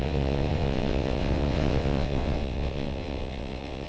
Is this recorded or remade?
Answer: remade